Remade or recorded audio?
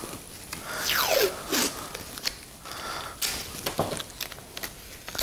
recorded